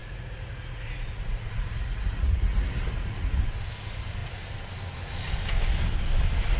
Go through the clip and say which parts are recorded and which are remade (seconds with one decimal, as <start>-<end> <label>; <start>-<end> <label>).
0.0-3.4 remade; 3.4-6.6 recorded